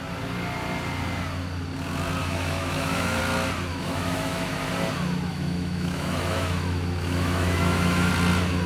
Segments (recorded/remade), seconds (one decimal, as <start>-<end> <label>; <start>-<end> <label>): 0.0-2.2 recorded; 2.2-3.2 remade; 3.2-3.7 recorded; 3.7-4.7 remade; 4.7-5.3 recorded; 5.3-8.1 remade; 8.1-8.7 recorded